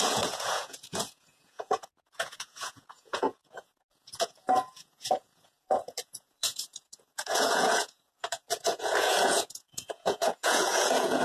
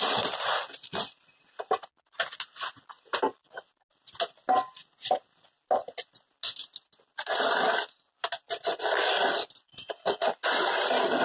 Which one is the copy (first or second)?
first